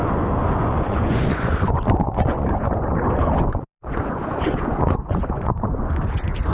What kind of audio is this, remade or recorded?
remade